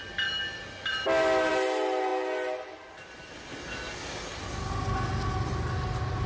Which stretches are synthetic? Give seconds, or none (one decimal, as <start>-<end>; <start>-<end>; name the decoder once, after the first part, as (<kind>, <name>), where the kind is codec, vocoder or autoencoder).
none